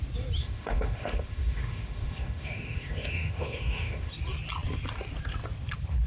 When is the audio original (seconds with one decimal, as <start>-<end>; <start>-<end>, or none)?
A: 0.0-0.4; 4.1-6.1

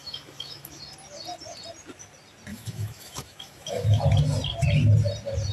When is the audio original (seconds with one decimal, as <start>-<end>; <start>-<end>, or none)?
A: 0.8-2.5; 4.0-5.5